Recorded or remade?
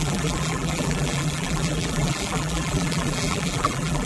remade